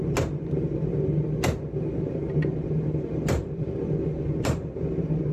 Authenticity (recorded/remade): recorded